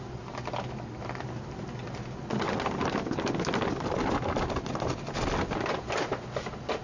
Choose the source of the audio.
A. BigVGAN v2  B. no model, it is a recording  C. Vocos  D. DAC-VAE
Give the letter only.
B